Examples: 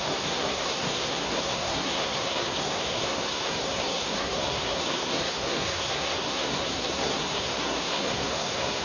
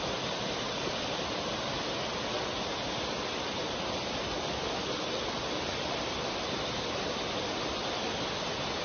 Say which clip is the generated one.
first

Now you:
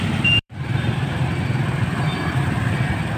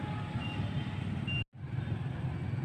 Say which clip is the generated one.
first